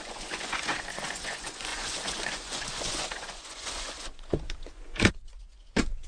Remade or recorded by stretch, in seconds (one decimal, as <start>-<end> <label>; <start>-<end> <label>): 0.0-6.1 remade